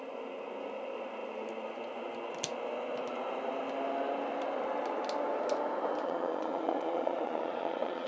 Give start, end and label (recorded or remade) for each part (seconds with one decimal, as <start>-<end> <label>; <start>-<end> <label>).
0.0-6.0 recorded; 6.0-8.1 remade